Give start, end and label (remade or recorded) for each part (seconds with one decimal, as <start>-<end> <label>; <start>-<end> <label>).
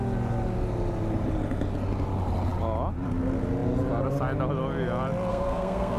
0.0-5.3 recorded; 5.3-6.0 remade